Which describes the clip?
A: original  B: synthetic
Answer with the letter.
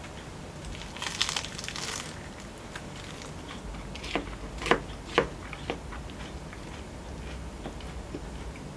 A